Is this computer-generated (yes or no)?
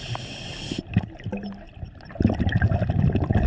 no